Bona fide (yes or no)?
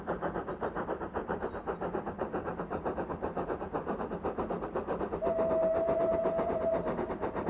no